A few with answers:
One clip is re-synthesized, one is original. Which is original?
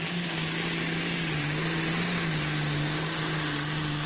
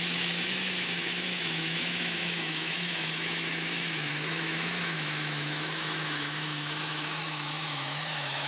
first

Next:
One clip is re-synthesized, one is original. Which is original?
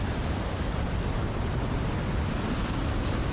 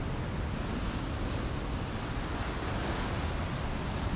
second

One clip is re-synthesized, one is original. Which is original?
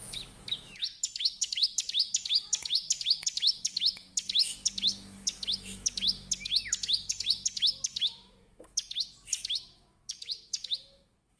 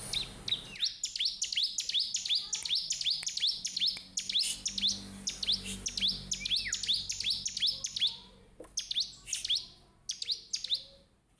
second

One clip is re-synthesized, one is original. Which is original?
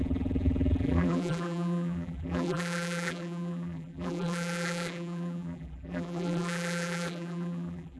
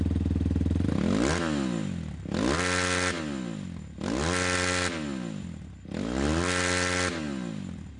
second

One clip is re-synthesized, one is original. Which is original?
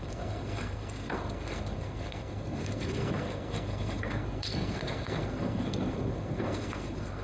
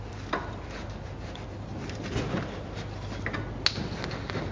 second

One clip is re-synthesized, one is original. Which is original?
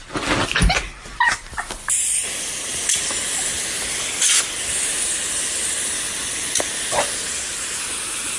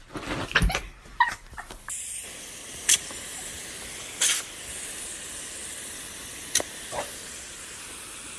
first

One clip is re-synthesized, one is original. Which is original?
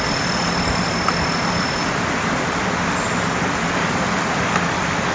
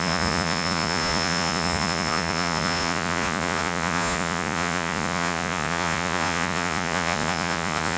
first